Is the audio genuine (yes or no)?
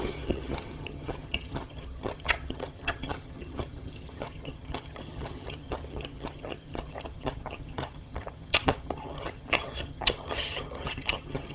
no